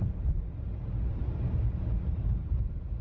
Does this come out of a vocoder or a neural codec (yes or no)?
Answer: no